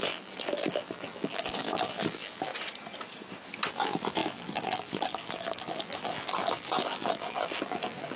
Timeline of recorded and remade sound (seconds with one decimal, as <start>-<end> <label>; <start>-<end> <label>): 0.0-2.5 remade; 2.5-3.7 recorded; 3.7-8.2 remade